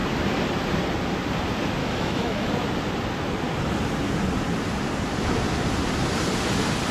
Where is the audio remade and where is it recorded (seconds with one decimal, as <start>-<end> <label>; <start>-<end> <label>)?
0.0-1.8 recorded; 1.8-2.5 remade; 2.5-6.9 recorded